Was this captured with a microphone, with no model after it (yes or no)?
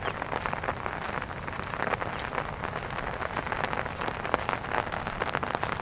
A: yes